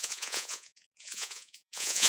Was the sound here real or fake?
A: fake